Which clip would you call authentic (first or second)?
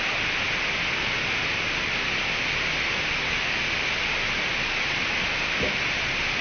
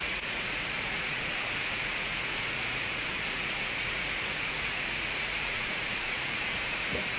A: first